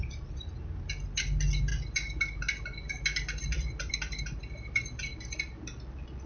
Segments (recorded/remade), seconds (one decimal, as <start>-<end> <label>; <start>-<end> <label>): 0.0-6.3 recorded